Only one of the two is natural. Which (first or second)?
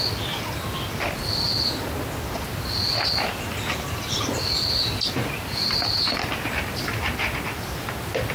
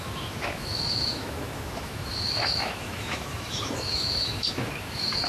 first